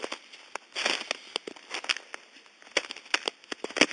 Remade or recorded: recorded